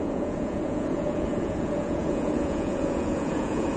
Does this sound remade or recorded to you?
remade